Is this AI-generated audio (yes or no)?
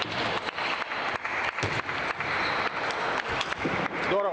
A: no